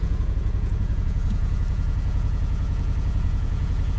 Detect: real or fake fake